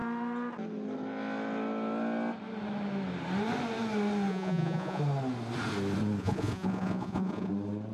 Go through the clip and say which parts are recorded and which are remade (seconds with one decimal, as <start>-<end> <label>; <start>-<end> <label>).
0.0-4.3 recorded; 4.3-5.0 remade; 5.0-6.2 recorded; 6.2-7.5 remade; 7.5-7.9 recorded